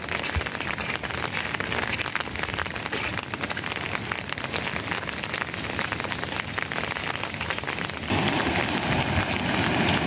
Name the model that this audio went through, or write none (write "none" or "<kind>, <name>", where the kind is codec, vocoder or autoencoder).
none